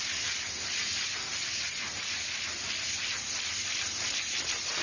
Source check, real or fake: real